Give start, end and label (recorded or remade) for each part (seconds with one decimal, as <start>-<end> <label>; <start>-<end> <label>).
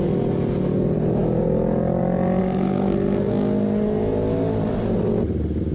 0.0-2.4 recorded; 2.4-3.3 remade; 3.3-5.7 recorded